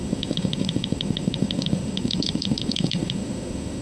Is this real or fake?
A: fake